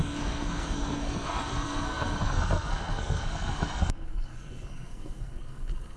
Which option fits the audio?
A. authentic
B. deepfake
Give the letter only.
B